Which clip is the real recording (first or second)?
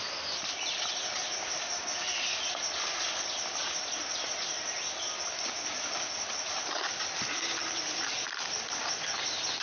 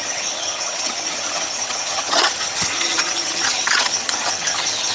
first